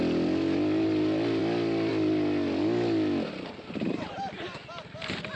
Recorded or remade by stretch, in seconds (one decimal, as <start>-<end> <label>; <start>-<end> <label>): 0.0-5.4 recorded